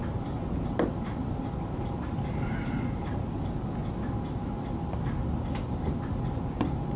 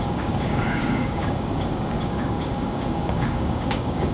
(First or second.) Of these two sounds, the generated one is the second